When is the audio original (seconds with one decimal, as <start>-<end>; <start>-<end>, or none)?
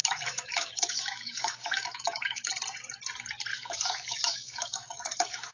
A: 2.5-3.5